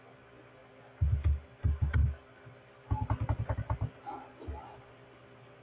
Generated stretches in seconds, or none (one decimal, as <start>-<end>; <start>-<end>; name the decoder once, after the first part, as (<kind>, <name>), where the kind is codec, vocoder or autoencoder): none